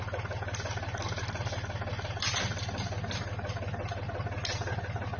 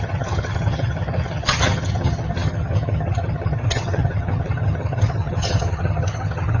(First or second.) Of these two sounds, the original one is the first